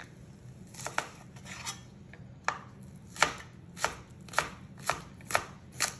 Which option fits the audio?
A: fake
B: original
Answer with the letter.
B